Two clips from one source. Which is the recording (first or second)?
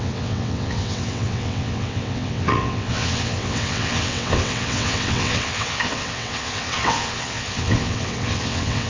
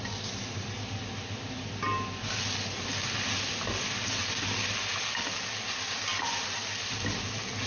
second